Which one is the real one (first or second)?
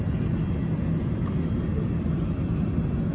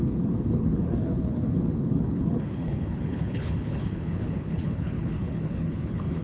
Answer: first